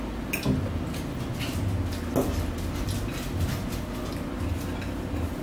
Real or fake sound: real